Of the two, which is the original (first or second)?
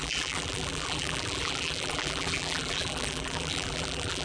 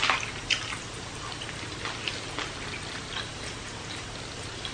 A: second